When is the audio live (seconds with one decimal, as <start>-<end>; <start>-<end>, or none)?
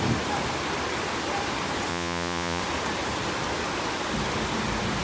0.0-1.9; 2.6-5.0